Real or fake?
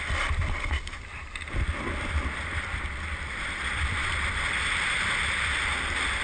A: real